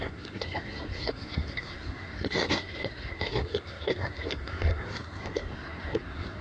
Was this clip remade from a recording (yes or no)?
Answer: yes